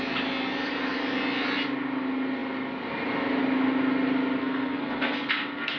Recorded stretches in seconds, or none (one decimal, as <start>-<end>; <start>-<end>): 0.0-4.4